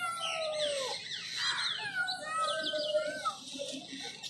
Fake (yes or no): no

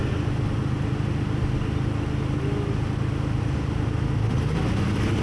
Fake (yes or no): no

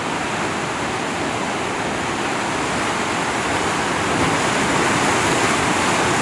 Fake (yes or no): no